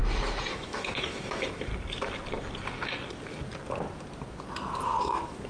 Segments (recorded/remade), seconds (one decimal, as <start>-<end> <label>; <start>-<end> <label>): 0.0-0.5 recorded; 0.5-1.7 remade; 1.7-5.0 recorded; 5.0-5.5 remade